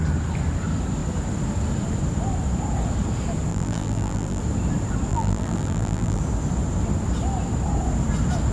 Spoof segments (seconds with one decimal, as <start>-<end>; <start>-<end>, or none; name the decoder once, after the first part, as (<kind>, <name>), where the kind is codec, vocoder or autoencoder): 3.5-4.4 (vocoder, BigVGAN v2); 5.1-6.2